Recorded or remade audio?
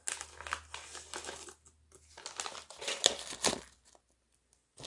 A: recorded